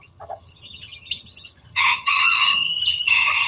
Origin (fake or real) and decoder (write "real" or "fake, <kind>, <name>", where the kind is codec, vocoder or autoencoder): fake, vocoder, HiFi-GAN